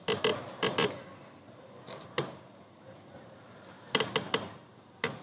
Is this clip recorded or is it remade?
recorded